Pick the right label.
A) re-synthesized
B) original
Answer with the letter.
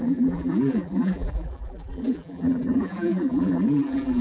A